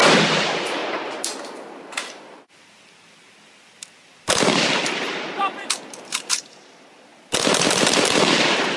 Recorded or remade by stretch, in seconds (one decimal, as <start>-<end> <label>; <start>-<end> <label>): 0.0-8.8 recorded